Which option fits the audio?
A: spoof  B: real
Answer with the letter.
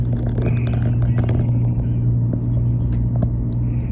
B